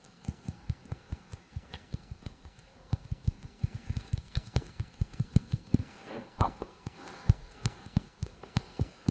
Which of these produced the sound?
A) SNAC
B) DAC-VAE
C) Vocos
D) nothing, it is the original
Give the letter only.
A